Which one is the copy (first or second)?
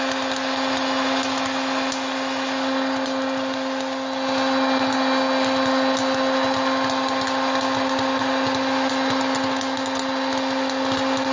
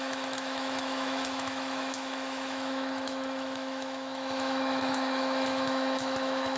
second